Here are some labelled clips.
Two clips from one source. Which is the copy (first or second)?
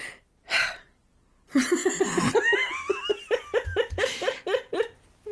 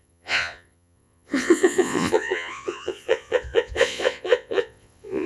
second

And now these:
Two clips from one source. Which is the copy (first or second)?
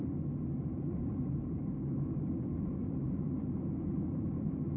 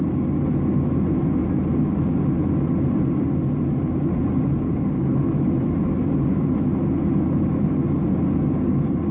first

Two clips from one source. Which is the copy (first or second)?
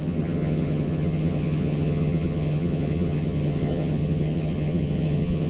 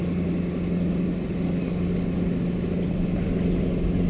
first